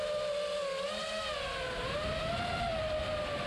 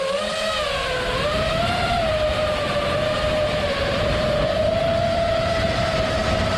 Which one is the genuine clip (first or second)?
first